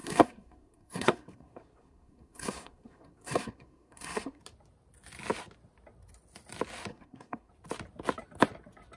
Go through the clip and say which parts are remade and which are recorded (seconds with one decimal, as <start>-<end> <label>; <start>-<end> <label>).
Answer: 0.0-4.4 remade; 4.4-6.9 recorded; 6.9-7.5 remade; 7.5-9.0 recorded